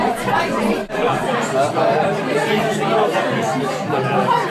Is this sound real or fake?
real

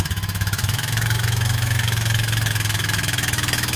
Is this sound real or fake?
fake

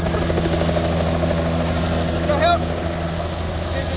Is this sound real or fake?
real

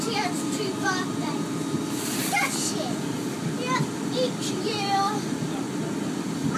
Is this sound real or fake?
real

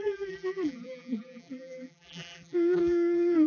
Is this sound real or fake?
fake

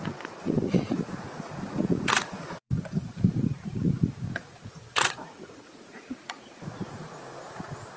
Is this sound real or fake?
fake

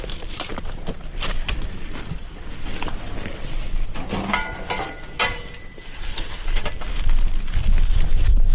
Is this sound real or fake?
real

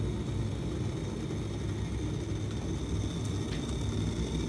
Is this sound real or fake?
real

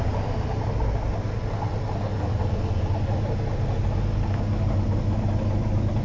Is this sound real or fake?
real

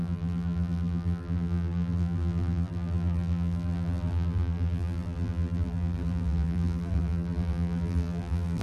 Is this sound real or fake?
fake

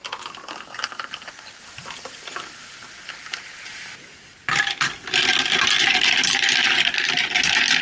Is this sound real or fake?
real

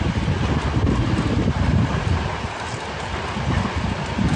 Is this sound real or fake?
real